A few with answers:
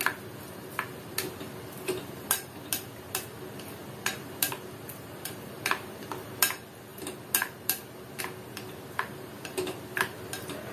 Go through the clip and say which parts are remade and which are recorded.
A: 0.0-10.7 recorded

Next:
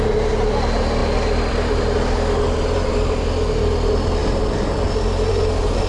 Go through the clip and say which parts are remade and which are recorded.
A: 0.0-5.9 recorded

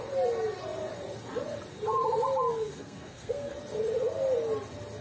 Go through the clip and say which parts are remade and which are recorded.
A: 0.0-2.5 recorded; 2.5-3.5 remade; 3.5-5.0 recorded

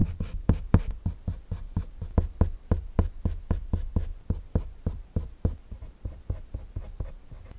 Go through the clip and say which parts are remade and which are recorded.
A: 0.0-0.6 remade; 0.6-7.6 recorded